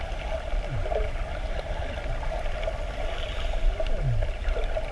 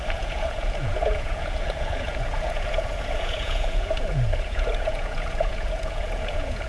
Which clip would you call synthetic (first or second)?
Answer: second